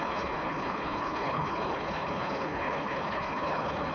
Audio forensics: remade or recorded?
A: remade